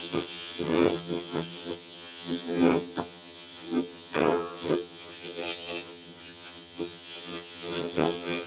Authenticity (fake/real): fake